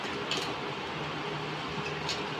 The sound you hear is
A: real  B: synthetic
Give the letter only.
A